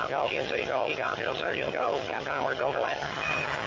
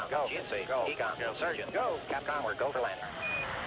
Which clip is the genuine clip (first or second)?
second